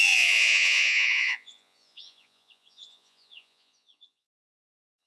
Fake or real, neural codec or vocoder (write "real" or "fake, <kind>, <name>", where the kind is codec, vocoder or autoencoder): fake, vocoder, Vocos